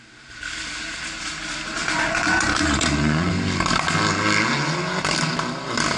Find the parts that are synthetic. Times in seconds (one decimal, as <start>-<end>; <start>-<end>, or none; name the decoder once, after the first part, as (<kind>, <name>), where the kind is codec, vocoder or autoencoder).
1.8-3.3 (vocoder, Vocos)